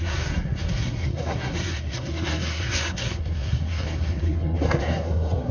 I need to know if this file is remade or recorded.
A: remade